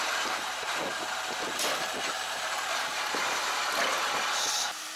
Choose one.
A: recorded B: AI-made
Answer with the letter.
A